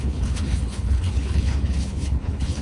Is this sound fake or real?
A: fake